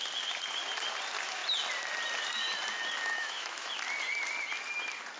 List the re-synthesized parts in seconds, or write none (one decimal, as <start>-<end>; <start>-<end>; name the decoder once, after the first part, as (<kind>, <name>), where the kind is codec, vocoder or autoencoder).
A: 3.1-3.7 (autoencoder, DAC-VAE)